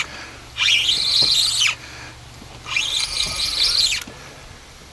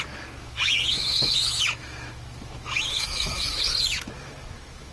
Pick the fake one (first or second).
second